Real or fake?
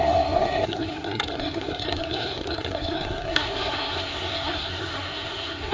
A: fake